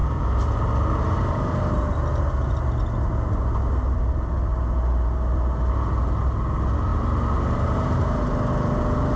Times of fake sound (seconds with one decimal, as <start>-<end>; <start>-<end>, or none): 0.0-1.7; 6.9-8.2